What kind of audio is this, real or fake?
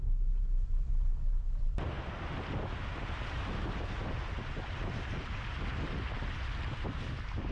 real